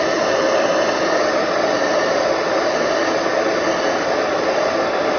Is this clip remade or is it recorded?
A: recorded